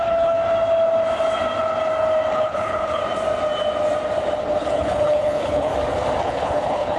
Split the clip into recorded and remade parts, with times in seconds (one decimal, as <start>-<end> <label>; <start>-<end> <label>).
0.0-0.4 remade; 0.4-2.3 recorded; 2.3-3.0 remade; 3.0-4.4 recorded; 4.4-5.7 remade; 5.7-6.2 recorded; 6.2-7.0 remade